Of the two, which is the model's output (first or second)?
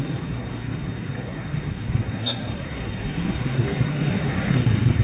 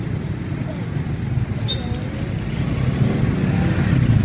first